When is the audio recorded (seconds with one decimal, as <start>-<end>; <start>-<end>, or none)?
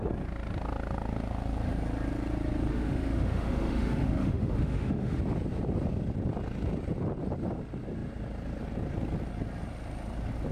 0.0-2.7; 5.2-10.5